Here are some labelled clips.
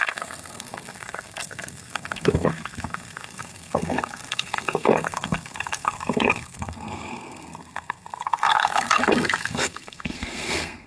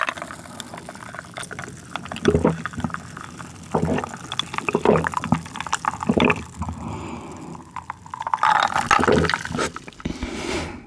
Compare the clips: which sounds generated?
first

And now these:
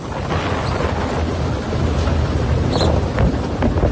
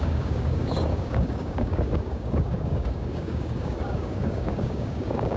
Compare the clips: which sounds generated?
second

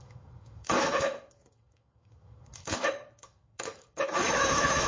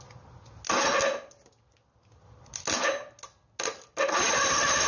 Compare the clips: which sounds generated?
first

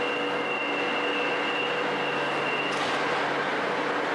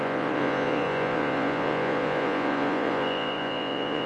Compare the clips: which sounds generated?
second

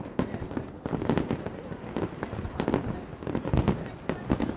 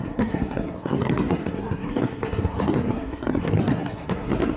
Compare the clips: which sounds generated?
second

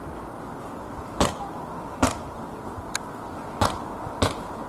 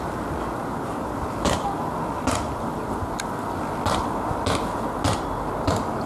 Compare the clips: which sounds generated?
first